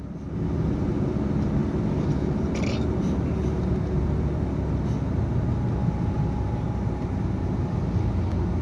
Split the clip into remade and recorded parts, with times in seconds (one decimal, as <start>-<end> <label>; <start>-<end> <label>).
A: 0.0-8.6 recorded